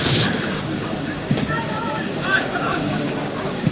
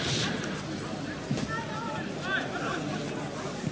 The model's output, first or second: first